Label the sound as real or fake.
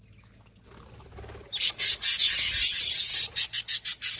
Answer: real